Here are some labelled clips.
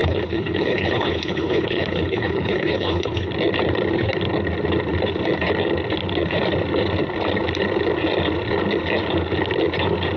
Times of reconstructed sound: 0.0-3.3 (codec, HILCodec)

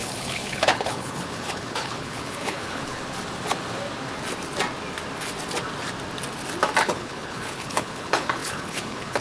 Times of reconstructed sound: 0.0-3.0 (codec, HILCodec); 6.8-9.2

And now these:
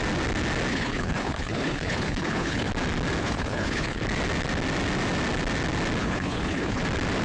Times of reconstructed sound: 0.7-2.7 (codec, HILCodec); 3.2-4.0; 6.0-6.8

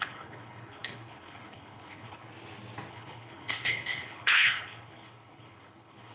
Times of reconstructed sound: 0.0-2.3 (codec, HILCodec); 2.9-6.1

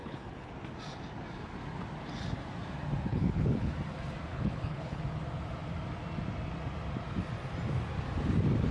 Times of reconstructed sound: 0.0-0.5 (codec, HILCodec); 3.1-3.7; 4.3-5.0